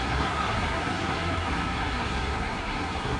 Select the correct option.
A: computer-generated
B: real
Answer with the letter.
A